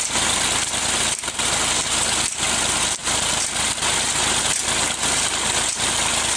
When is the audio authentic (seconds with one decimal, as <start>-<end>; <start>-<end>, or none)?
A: 0.0-6.4